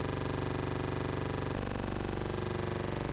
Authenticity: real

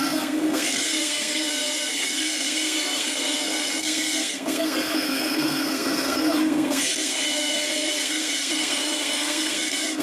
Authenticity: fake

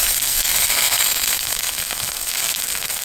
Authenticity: fake